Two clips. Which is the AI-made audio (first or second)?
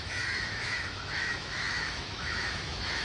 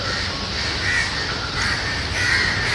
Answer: first